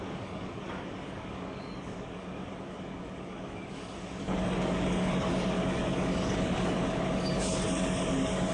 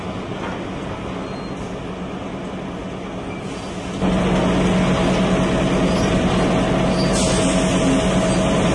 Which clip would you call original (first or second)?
second